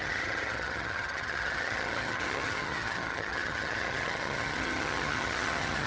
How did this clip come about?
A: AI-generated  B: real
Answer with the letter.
A